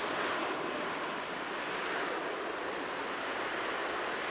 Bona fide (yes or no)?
no